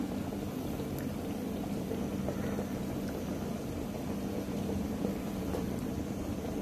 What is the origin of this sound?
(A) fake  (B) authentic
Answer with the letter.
A